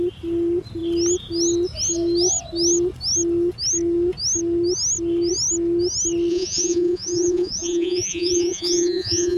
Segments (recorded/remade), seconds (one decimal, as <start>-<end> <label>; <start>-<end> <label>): 0.0-6.3 recorded; 6.3-9.4 remade

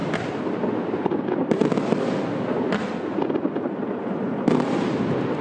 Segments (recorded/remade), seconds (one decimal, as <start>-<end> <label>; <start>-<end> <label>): 0.0-5.4 recorded

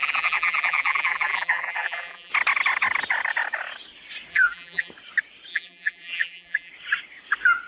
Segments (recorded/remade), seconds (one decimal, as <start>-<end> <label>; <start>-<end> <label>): 0.0-2.3 remade; 2.3-4.3 recorded; 4.3-4.9 remade; 4.9-5.5 recorded; 5.5-6.7 remade; 6.7-7.7 recorded